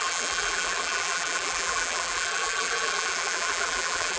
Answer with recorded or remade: remade